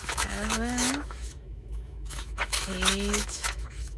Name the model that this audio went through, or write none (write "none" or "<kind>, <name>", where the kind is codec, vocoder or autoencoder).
autoencoder, DAC-VAE